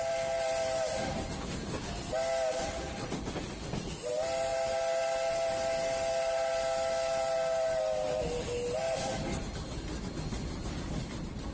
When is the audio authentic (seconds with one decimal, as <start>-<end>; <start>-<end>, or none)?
0.0-11.5